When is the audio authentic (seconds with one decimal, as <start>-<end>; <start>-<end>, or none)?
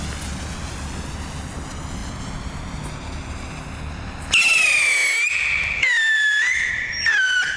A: 0.0-7.6